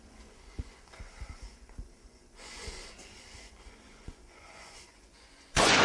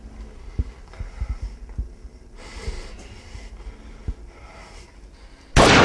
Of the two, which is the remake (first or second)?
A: first